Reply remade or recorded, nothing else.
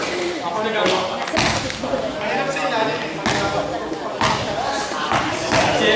recorded